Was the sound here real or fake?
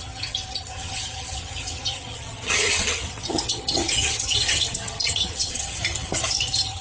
fake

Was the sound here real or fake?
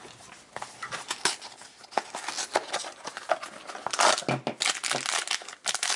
real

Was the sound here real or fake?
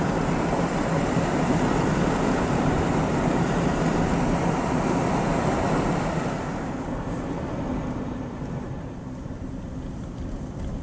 fake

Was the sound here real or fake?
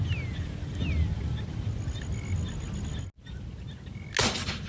real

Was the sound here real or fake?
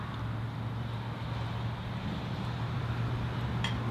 real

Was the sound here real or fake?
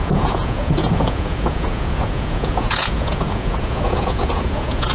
fake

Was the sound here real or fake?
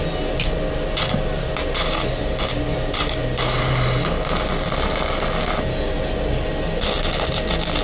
real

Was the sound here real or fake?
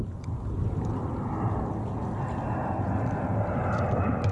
real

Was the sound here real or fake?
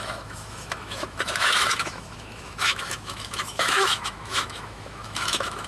fake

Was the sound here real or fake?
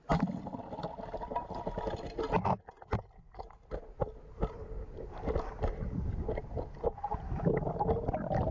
real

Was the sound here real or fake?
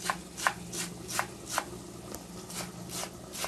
real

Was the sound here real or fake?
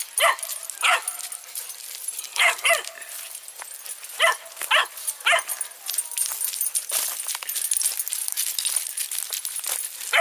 real